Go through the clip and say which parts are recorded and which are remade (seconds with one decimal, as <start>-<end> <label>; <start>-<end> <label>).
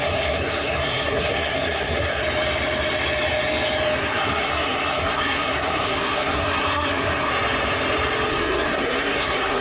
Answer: 0.0-2.2 remade; 2.2-4.0 recorded; 4.0-7.3 remade; 7.3-8.3 recorded; 8.3-9.6 remade